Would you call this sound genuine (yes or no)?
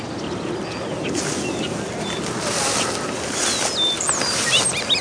yes